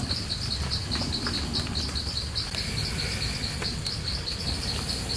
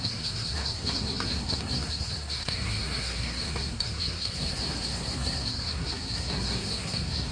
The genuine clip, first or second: first